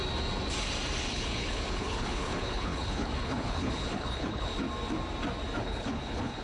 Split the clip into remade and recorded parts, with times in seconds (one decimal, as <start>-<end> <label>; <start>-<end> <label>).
0.0-1.1 recorded; 1.1-4.5 remade; 4.5-5.6 recorded; 5.6-6.4 remade